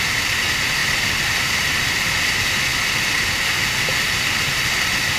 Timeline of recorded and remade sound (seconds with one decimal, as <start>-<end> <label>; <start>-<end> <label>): 0.0-5.2 recorded